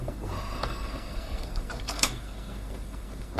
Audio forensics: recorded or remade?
remade